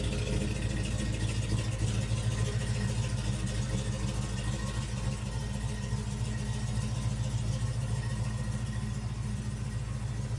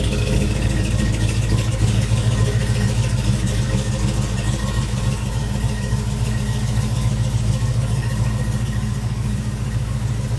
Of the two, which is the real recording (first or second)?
first